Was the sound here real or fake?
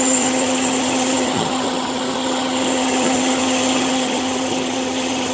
fake